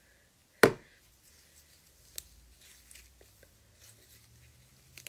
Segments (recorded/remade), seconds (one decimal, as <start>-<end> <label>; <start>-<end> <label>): 0.0-5.1 recorded